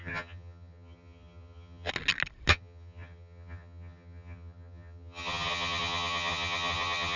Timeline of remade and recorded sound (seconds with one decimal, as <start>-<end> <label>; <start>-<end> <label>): 0.0-1.9 remade; 1.9-2.5 recorded; 2.5-7.2 remade